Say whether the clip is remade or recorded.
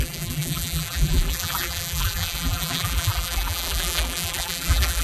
remade